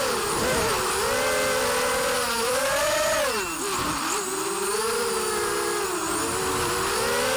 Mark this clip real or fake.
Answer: real